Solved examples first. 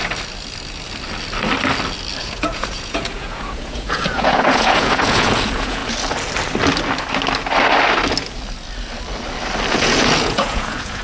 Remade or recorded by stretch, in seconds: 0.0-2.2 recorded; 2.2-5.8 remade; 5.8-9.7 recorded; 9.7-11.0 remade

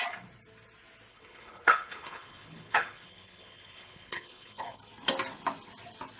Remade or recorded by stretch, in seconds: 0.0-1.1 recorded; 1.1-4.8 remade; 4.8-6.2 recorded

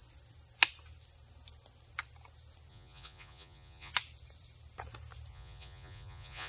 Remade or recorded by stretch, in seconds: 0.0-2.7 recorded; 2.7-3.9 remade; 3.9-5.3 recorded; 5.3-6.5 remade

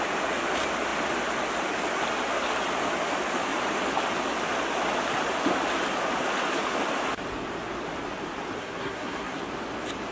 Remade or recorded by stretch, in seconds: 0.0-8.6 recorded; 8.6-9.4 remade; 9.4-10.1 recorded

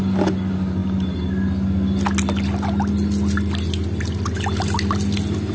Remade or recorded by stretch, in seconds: 0.0-5.5 recorded